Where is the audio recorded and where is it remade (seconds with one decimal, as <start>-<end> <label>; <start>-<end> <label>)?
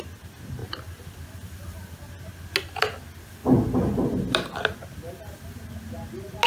0.0-0.6 recorded; 0.6-2.1 remade; 2.1-6.5 recorded